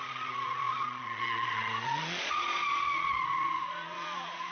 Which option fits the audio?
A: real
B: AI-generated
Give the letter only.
B